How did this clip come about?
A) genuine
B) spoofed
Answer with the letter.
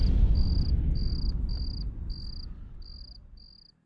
A